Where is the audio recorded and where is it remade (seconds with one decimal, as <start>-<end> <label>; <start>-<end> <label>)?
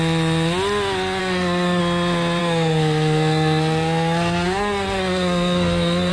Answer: 0.0-1.2 recorded; 1.2-1.8 remade; 1.8-2.4 recorded; 2.4-6.1 remade